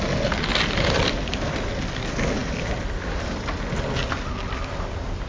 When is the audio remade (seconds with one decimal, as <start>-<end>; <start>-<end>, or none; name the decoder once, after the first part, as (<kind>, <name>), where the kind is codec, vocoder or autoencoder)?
0.5-1.5 (vocoder, BigVGAN v2); 2.4-3.3